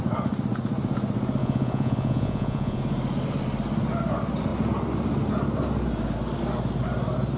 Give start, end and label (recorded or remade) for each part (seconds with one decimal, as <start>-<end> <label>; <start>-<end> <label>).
0.0-1.4 recorded; 1.4-2.8 remade; 2.8-7.4 recorded